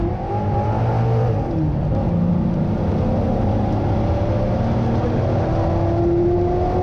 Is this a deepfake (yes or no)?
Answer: no